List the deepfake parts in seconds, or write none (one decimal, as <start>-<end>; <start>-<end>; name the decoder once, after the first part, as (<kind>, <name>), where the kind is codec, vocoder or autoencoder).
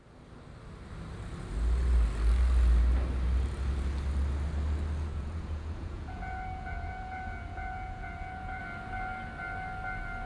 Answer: 5.1-8.6 (vocoder, Vocos)